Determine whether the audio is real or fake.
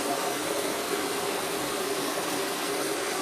fake